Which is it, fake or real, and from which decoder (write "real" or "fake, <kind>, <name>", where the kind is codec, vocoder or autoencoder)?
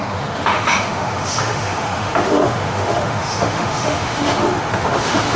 fake, autoencoder, DAC-VAE